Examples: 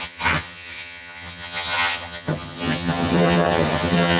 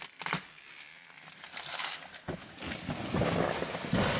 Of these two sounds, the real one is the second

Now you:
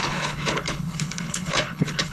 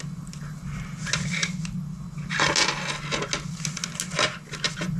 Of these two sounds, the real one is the second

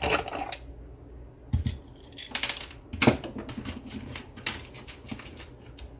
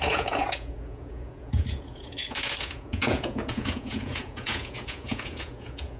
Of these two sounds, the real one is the first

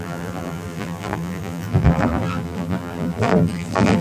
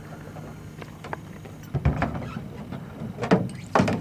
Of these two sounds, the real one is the second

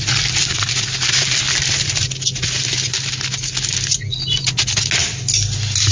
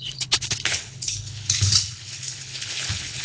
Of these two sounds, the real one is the first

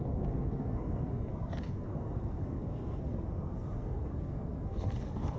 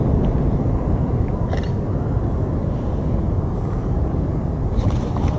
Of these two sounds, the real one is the second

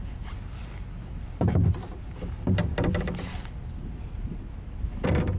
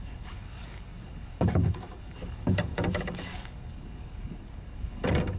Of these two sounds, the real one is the first